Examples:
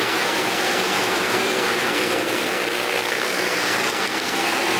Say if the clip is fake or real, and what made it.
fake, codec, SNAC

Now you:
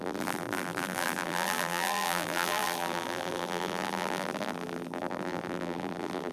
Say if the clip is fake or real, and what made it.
fake, vocoder, BigVGAN v2